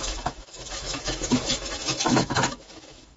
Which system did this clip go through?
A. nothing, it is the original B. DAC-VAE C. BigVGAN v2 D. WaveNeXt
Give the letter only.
B